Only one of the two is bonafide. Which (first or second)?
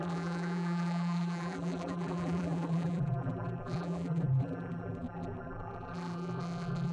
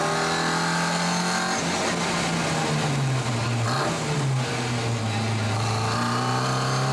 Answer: second